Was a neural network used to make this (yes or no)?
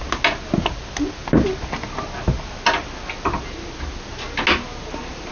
no